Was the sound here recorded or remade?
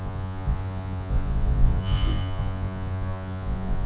remade